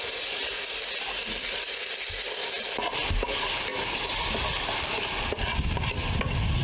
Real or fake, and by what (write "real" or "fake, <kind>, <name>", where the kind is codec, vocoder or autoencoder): fake, vocoder, BigVGAN v2